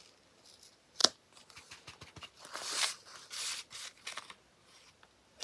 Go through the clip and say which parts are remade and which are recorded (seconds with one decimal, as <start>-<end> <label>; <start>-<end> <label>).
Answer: 0.0-5.4 recorded